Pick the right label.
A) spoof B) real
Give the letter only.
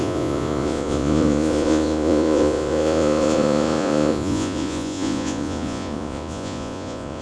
A